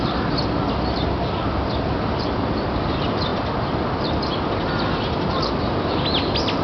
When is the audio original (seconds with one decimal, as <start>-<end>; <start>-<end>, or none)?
0.0-6.6